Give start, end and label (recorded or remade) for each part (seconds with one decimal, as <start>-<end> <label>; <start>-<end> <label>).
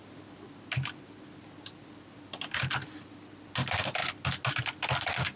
0.0-5.4 recorded